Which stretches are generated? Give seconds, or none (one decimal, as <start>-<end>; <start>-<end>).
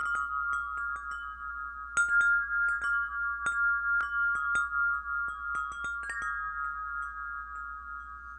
none